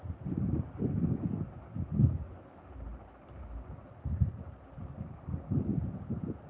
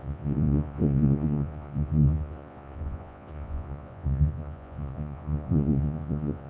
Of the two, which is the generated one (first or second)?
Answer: second